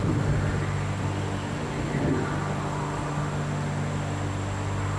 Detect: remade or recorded recorded